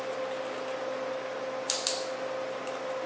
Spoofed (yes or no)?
no